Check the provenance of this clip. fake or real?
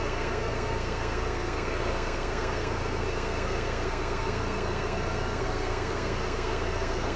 fake